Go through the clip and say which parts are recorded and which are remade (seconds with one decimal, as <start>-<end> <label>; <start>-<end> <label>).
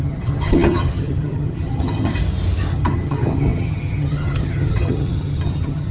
0.0-2.1 remade; 2.1-2.7 recorded; 2.7-5.9 remade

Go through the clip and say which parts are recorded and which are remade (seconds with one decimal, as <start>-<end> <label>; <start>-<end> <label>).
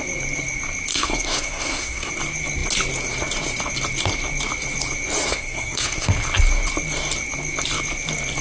0.0-0.9 recorded; 0.9-2.1 remade; 2.1-5.3 recorded; 5.3-6.1 remade; 6.1-8.4 recorded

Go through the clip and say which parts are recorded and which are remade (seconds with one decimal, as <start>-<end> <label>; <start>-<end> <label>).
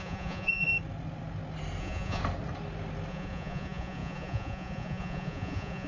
0.0-0.7 remade; 0.7-1.8 recorded; 1.8-2.2 remade; 2.2-3.1 recorded; 3.1-5.9 remade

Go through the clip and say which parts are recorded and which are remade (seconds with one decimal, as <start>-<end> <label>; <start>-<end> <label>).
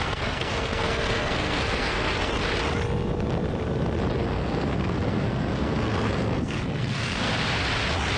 0.0-2.3 remade; 2.3-4.2 recorded; 4.2-7.3 remade; 7.3-8.2 recorded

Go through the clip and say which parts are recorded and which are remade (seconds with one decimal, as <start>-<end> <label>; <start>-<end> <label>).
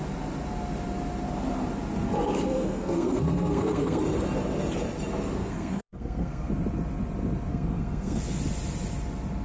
0.0-2.5 recorded; 2.5-4.0 remade; 4.0-5.4 recorded; 5.4-6.5 remade; 6.5-7.5 recorded; 7.5-8.2 remade; 8.2-9.4 recorded